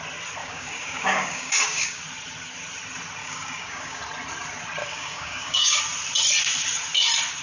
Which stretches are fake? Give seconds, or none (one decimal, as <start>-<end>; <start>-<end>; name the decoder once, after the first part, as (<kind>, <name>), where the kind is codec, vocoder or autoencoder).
0.4-2.0 (codec, DAC); 3.2-4.0; 4.8-5.8